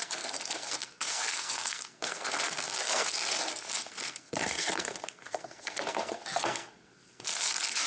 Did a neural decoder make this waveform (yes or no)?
yes